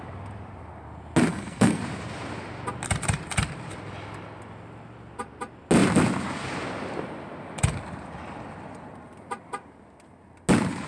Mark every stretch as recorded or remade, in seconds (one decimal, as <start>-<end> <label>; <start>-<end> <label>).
0.0-1.3 recorded; 1.3-1.8 remade; 1.8-10.9 recorded